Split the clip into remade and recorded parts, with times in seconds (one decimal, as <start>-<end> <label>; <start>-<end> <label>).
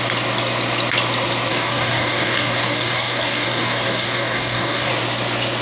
0.0-1.5 recorded; 1.5-4.9 remade; 4.9-5.6 recorded